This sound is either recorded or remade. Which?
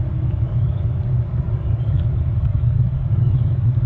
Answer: remade